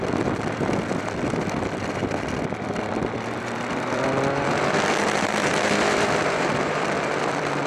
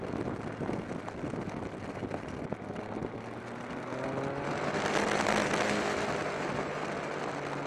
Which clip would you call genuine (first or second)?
second